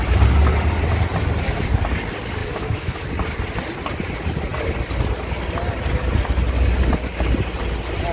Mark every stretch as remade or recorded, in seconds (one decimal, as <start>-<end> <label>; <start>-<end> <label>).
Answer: 0.0-2.4 recorded; 2.4-3.0 remade; 3.0-8.1 recorded